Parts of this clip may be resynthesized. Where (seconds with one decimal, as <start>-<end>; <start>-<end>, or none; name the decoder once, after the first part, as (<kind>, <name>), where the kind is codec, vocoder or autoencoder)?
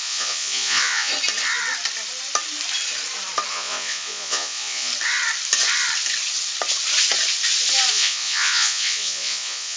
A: 0.0-1.1 (vocoder, Vocos); 3.5-4.9; 7.9-9.8